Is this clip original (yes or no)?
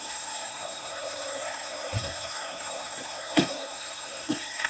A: no